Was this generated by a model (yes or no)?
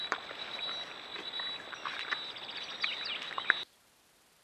no